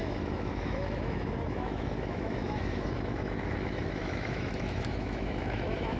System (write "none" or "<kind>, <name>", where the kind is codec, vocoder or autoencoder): autoencoder, DAC-VAE